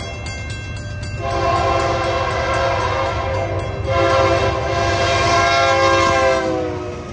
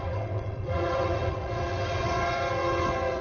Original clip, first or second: first